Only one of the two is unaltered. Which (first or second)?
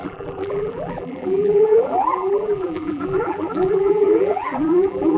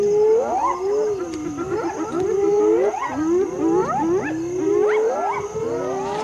second